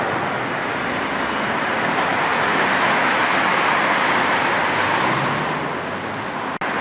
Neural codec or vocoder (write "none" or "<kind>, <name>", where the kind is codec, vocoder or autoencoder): none